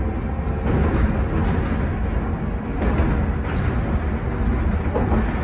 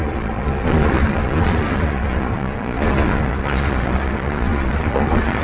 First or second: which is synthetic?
second